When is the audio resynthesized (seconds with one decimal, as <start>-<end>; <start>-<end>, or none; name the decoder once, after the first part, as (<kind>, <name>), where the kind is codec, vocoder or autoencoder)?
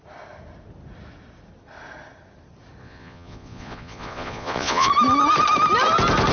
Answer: 2.8-4.9 (vocoder, Vocos)